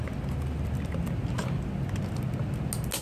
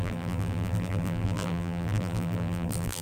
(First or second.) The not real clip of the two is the second